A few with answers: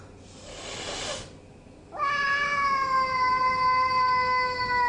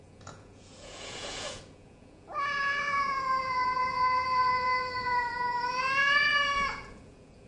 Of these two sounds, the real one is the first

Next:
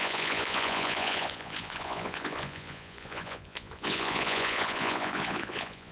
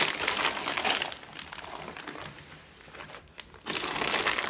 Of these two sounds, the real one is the second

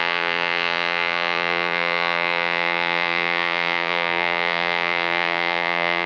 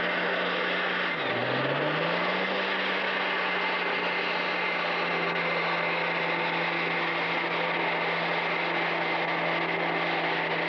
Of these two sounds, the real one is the second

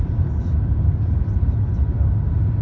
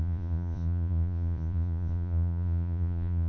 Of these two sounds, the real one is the first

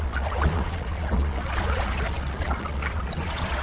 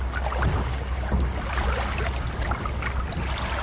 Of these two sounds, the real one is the second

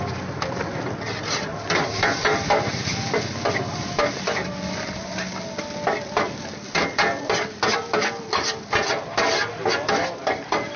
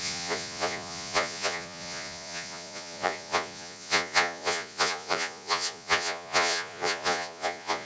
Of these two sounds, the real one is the first